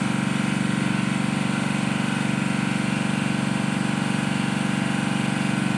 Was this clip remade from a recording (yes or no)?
no